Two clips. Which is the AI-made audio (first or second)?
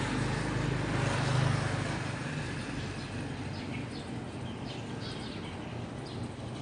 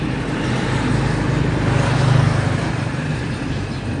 second